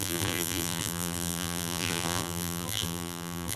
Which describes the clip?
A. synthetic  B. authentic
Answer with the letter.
A